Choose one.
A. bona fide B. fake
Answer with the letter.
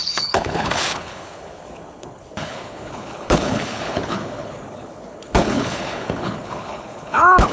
B